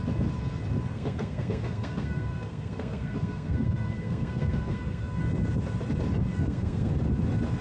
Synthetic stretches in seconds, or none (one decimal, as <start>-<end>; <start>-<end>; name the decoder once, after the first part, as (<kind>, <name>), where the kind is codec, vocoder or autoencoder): 0.9-5.2 (codec, SNAC); 6.3-6.9